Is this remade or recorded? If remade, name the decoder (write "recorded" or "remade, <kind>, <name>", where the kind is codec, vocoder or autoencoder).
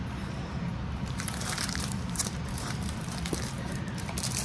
remade, vocoder, BigVGAN v2